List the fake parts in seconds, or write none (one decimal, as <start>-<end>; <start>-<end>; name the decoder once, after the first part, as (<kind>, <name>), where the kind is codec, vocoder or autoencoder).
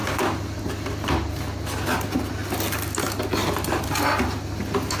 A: none